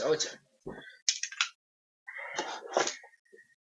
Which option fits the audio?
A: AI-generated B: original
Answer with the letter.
B